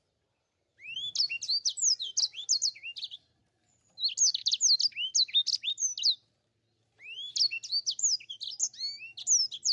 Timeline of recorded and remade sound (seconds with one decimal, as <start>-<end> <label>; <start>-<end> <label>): 0.0-9.7 recorded